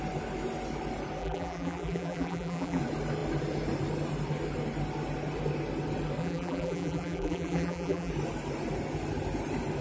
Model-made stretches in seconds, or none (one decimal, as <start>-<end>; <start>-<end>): 1.2-2.8; 6.2-8.1